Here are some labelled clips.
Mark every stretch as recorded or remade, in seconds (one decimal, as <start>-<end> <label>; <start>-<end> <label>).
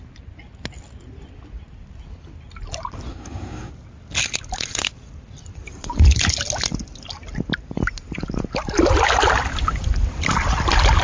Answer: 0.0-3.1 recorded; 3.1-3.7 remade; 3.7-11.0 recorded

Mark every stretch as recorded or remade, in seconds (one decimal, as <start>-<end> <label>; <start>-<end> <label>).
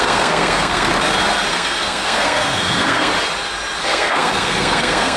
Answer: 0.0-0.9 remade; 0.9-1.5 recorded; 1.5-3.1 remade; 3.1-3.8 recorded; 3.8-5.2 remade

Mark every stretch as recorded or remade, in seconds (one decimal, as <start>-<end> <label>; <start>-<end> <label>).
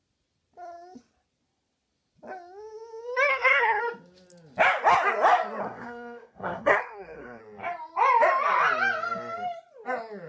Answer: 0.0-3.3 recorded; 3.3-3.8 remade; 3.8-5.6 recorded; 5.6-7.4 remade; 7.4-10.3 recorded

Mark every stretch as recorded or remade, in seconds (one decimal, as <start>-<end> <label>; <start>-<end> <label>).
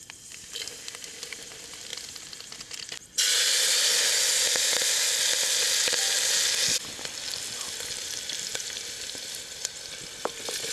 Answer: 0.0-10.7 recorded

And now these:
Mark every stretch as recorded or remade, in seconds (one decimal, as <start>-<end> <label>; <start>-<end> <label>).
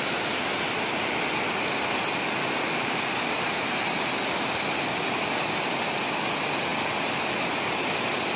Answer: 0.0-8.4 recorded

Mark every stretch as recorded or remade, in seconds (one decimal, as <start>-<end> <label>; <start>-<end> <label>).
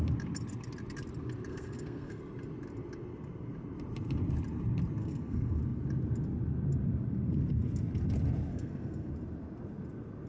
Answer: 0.0-1.5 recorded; 1.5-2.2 remade; 2.2-5.0 recorded; 5.0-5.6 remade; 5.6-8.5 recorded; 8.5-9.1 remade; 9.1-10.3 recorded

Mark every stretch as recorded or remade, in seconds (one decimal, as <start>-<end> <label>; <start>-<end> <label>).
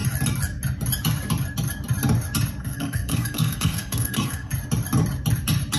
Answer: 0.0-2.6 recorded; 2.6-4.5 remade; 4.5-5.8 recorded